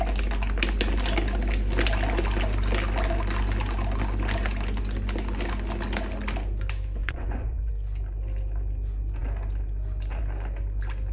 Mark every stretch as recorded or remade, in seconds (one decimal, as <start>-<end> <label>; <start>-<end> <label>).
0.0-7.0 recorded; 7.0-7.7 remade; 7.7-11.1 recorded